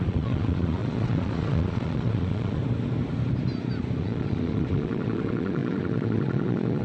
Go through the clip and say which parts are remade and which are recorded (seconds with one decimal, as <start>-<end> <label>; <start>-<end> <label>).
0.0-2.6 remade; 2.6-4.0 recorded; 4.0-6.8 remade